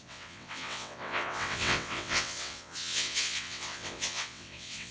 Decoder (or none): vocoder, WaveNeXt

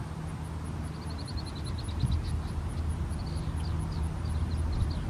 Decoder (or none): none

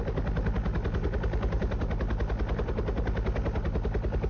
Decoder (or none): none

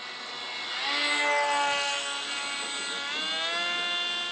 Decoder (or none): none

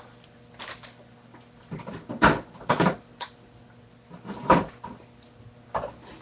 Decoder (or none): none